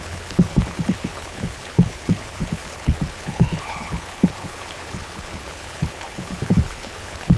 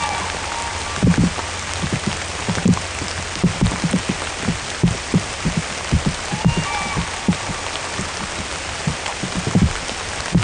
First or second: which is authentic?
second